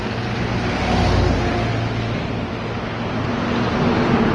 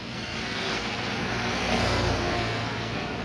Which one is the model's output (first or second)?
second